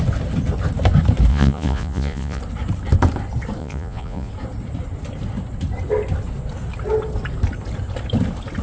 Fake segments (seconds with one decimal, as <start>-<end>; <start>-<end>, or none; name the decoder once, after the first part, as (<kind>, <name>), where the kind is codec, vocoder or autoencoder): 1.3-2.4 (vocoder, Vocos); 3.6-4.3